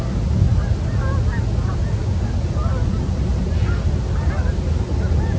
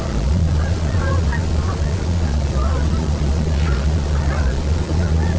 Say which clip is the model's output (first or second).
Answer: second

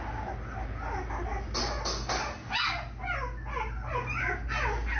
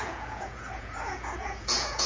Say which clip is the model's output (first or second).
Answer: second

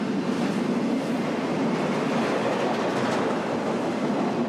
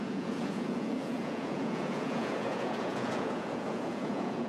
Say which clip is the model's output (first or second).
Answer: second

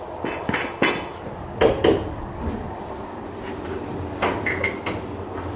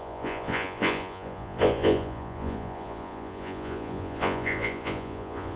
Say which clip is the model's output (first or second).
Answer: second